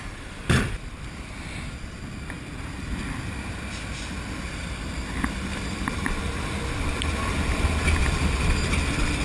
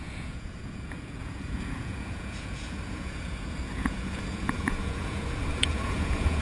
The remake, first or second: second